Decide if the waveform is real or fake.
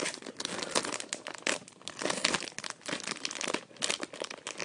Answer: real